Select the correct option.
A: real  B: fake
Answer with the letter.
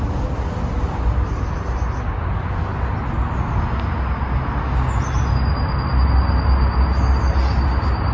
A